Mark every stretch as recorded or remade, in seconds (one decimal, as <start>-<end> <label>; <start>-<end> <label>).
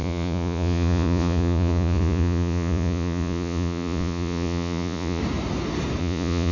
0.0-5.2 remade; 5.2-6.0 recorded; 6.0-6.5 remade